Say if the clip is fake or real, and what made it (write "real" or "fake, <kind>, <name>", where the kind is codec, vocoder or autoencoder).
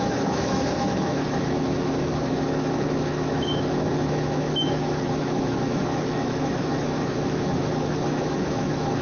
fake, autoencoder, DAC-VAE